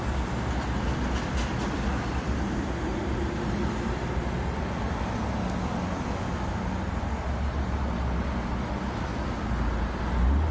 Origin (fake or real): real